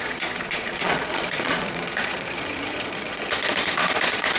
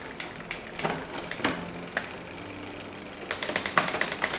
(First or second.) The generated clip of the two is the first